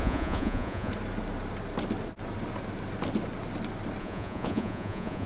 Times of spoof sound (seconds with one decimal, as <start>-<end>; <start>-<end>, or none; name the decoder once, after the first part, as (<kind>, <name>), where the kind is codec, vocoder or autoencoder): 0.0-0.9 (vocoder, Vocos); 4.0-5.3